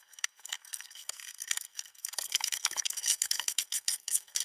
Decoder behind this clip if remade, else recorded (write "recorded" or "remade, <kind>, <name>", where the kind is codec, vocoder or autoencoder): remade, codec, SNAC